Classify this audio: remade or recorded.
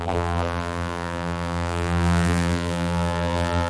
remade